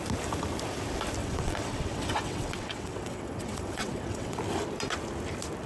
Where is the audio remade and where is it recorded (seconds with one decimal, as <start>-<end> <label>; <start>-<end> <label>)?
0.0-1.2 recorded; 1.2-4.4 remade; 4.4-5.7 recorded

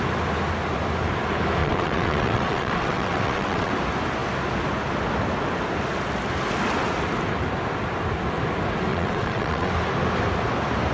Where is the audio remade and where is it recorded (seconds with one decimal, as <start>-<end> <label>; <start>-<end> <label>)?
0.0-1.6 recorded; 1.6-3.7 remade; 3.7-8.9 recorded; 8.9-9.7 remade; 9.7-10.9 recorded

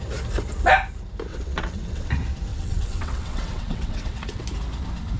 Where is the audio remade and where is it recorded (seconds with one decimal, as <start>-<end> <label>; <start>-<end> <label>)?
0.0-1.3 recorded; 1.3-2.1 remade; 2.1-2.5 recorded; 2.5-4.4 remade; 4.4-5.2 recorded

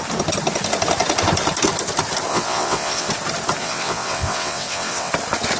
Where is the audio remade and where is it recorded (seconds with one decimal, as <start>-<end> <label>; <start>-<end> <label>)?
0.0-2.3 recorded; 2.3-3.1 remade; 3.1-3.6 recorded; 3.6-5.1 remade; 5.1-5.6 recorded

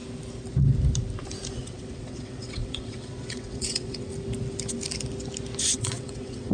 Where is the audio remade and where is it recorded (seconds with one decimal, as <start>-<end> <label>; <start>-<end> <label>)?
0.0-1.5 recorded; 1.5-4.1 remade; 4.1-5.6 recorded; 5.6-6.5 remade

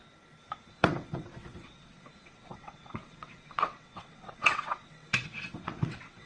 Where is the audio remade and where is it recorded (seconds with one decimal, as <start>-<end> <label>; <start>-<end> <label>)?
0.0-0.7 recorded; 0.7-6.3 remade

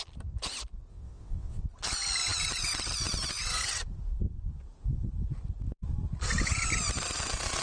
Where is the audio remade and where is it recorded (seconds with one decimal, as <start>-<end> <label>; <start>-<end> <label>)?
0.0-0.9 recorded; 0.9-1.6 remade; 1.6-7.6 recorded